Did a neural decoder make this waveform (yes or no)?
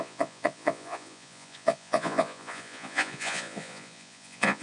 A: yes